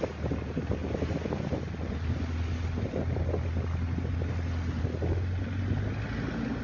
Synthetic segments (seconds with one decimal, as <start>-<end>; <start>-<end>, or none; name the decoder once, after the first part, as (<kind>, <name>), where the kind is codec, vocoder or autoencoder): none

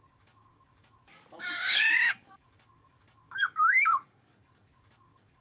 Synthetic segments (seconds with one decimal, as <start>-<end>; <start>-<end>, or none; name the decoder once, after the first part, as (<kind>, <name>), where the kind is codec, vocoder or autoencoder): 0.0-5.4 (codec, DAC)

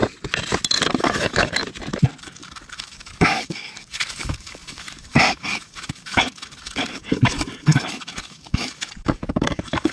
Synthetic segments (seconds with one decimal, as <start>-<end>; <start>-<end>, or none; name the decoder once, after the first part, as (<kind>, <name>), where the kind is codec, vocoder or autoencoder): 1.0-1.6 (codec, DAC); 2.2-9.9

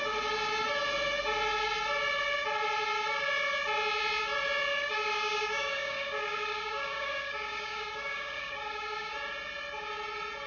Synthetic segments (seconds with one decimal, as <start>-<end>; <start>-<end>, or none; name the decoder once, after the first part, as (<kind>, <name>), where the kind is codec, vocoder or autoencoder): 4.7-9.1 (codec, DAC)